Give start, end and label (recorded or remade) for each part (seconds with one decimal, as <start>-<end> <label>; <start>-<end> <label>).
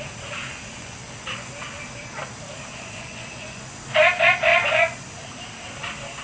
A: 0.0-0.5 recorded; 0.5-1.5 remade; 1.5-2.7 recorded; 2.7-3.8 remade; 3.8-4.5 recorded; 4.5-5.3 remade; 5.3-6.2 recorded